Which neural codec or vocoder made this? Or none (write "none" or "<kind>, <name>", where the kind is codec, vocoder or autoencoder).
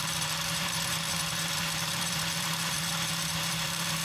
vocoder, BigVGAN v2